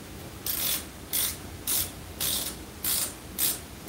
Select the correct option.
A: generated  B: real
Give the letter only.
B